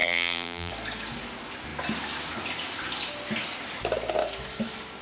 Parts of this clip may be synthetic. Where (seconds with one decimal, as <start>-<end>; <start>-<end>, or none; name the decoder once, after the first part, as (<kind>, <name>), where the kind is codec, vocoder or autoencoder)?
0.0-0.7 (vocoder, BigVGAN v2)